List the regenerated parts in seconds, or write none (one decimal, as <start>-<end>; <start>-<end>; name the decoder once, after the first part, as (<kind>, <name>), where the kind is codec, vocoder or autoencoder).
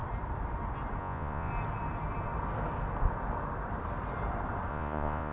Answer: 1.0-1.5 (vocoder, Vocos); 4.7-5.3